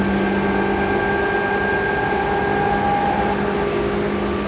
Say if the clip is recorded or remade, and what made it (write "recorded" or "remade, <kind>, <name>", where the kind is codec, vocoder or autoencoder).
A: recorded